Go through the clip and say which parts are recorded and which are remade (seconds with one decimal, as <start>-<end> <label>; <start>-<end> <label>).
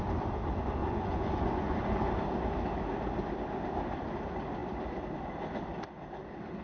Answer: 0.0-0.8 recorded; 0.8-2.0 remade; 2.0-6.6 recorded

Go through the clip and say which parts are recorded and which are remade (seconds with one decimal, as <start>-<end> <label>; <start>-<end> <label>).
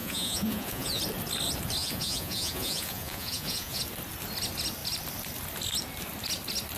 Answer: 0.0-1.0 remade; 1.0-1.8 recorded; 1.8-3.8 remade; 3.8-6.8 recorded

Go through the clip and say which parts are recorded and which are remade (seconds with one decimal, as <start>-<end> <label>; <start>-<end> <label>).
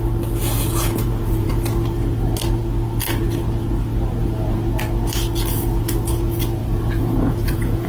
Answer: 0.0-0.4 recorded; 0.4-1.5 remade; 1.5-4.2 recorded; 4.2-4.8 remade; 4.8-6.6 recorded; 6.6-7.9 remade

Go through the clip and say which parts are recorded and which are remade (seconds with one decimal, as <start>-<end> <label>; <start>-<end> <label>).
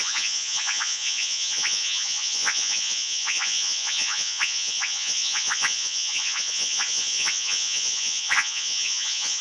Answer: 0.0-9.4 remade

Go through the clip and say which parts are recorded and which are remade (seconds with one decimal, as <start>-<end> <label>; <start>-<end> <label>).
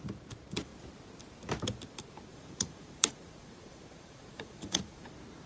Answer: 0.0-2.3 recorded; 2.3-5.1 remade; 5.1-5.5 recorded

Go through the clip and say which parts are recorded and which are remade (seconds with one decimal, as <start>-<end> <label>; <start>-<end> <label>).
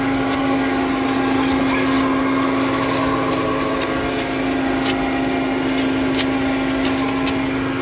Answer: 0.0-7.8 recorded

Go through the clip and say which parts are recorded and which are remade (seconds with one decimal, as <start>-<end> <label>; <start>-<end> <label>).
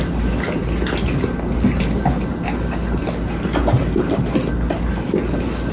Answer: 0.0-5.7 recorded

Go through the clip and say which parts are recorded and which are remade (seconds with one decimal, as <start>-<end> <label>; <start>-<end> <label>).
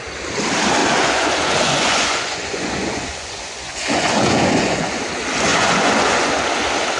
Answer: 0.0-0.8 recorded; 0.8-5.0 remade; 5.0-5.5 recorded; 5.5-6.5 remade; 6.5-7.0 recorded